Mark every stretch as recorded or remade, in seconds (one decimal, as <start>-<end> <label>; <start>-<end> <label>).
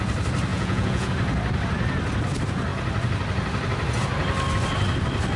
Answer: 0.0-0.5 recorded; 0.5-1.1 remade; 1.1-5.4 recorded